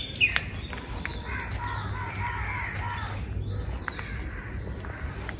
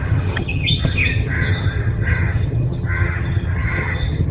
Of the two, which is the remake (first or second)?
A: second